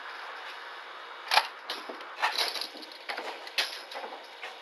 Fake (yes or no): no